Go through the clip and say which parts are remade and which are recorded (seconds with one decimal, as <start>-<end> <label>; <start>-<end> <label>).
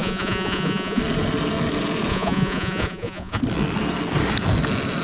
0.0-1.0 remade; 1.0-2.1 recorded; 2.1-3.4 remade; 3.4-5.0 recorded